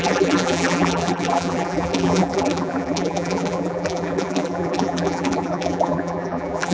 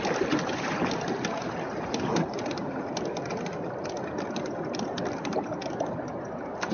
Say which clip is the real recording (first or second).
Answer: second